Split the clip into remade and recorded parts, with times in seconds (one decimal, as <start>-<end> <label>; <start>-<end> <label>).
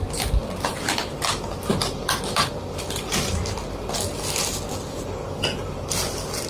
0.0-6.5 recorded